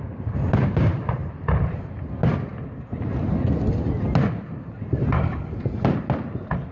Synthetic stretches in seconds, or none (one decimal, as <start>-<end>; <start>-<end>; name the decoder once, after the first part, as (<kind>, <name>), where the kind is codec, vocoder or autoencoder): none